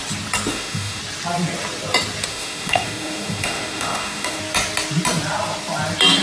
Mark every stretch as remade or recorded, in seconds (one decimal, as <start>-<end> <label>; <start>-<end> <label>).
0.0-0.5 recorded; 0.5-1.0 remade; 1.0-2.3 recorded; 2.3-4.4 remade; 4.4-6.2 recorded